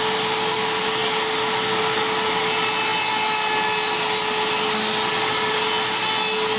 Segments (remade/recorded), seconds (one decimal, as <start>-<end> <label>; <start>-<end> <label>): 0.0-6.6 recorded